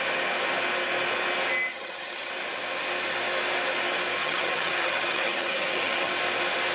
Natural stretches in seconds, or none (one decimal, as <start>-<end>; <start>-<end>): 0.0-1.7; 2.3-4.2; 6.1-6.7